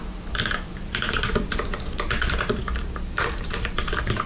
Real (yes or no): no